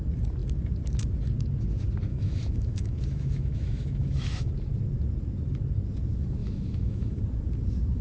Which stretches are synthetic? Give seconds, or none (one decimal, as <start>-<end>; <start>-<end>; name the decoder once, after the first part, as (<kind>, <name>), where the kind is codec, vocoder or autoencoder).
2.1-4.5 (autoencoder, DAC-VAE); 6.4-7.2